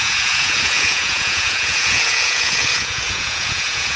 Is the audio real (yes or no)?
no